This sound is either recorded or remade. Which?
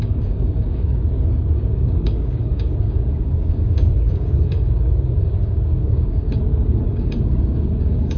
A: remade